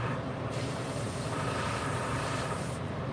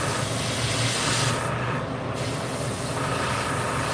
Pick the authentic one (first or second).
second